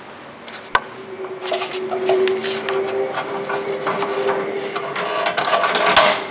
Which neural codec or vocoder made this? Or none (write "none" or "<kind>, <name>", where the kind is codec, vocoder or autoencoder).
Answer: none